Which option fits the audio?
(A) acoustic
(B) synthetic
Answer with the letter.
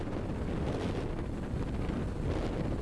A